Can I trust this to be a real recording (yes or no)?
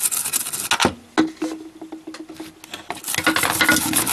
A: yes